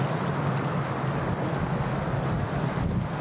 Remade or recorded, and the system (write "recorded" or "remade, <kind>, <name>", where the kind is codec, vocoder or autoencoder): recorded